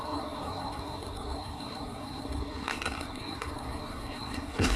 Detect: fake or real fake